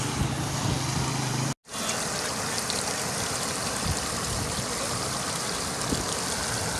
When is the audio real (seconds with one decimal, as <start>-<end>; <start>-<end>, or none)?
0.0-6.8